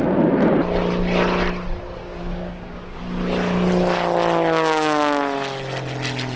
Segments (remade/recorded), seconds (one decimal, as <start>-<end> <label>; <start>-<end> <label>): 0.0-2.0 recorded; 2.0-3.0 remade; 3.0-6.4 recorded